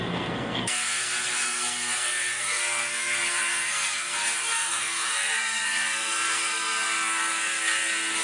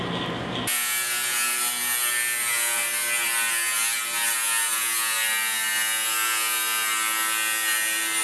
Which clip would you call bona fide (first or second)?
second